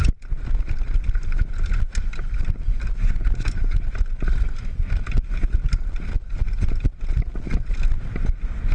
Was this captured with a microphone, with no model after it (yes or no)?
yes